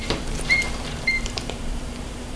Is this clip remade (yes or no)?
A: yes